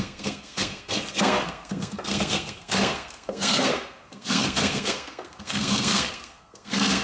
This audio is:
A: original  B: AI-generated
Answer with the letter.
B